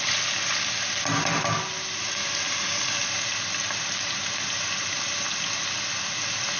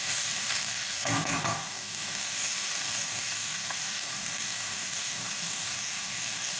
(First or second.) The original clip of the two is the first